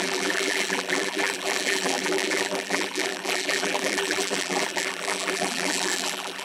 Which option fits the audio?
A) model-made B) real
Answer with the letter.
A